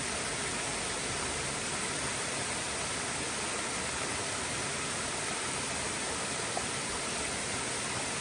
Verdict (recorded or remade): recorded